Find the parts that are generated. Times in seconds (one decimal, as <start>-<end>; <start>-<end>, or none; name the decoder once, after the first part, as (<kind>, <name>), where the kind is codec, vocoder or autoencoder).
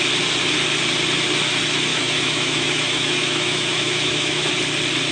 1.9-4.5 (autoencoder, DAC-VAE)